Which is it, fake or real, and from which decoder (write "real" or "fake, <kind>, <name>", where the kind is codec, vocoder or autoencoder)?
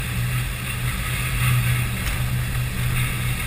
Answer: real